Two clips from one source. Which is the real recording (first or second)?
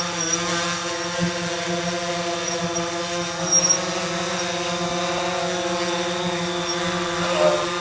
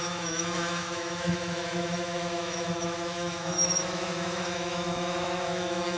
first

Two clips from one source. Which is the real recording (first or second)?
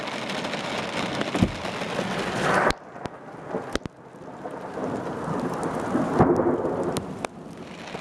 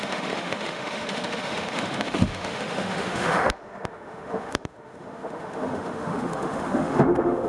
first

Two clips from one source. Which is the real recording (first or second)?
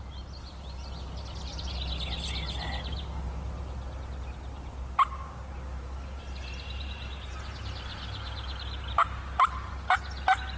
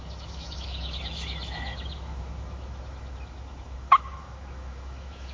first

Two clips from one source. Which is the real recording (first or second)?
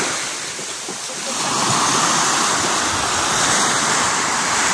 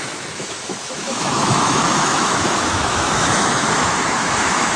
first